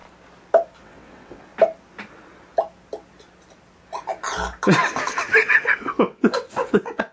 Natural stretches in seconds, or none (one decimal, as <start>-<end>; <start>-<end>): 0.0-0.8; 1.5-5.8